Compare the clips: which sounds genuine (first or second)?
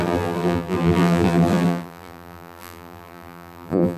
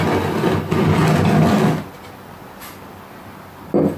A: second